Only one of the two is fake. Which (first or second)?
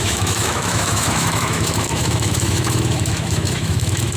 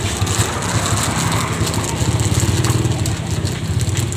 first